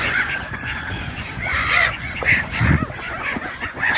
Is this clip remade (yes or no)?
yes